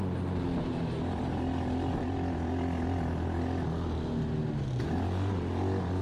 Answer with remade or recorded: recorded